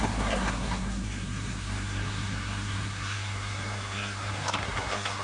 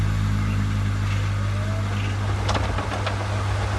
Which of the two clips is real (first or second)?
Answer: second